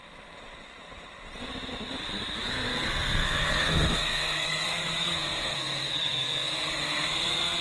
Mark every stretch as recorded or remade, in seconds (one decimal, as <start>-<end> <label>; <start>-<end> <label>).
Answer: 0.0-2.7 recorded; 2.7-7.6 remade